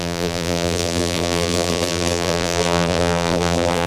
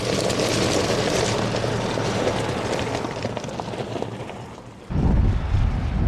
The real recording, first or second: second